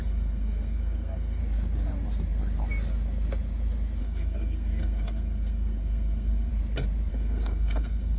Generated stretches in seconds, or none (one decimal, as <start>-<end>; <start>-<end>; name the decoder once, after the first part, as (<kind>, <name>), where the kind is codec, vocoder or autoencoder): 0.0-1.4 (codec, SNAC); 4.0-6.5; 7.1-8.2